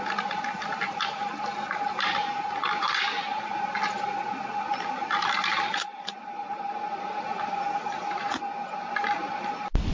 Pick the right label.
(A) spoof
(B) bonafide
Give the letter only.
B